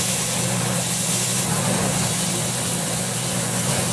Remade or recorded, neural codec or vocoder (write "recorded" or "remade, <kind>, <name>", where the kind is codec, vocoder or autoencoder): remade, vocoder, Vocos